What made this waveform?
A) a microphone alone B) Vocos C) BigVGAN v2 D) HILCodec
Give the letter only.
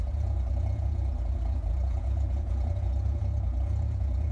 B